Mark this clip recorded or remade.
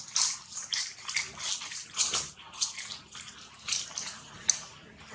recorded